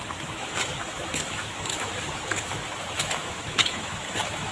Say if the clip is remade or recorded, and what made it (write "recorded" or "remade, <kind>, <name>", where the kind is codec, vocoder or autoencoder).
remade, autoencoder, DAC-VAE